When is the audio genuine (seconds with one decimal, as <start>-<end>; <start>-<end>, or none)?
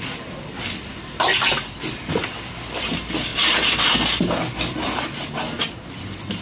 0.0-6.4